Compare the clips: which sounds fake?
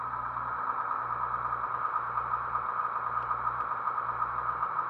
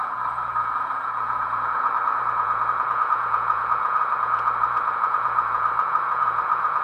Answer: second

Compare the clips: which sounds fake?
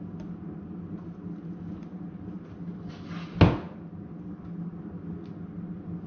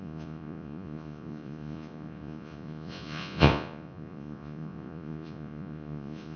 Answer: second